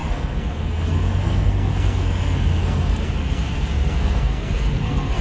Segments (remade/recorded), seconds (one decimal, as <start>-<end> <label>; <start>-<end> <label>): 0.0-5.2 remade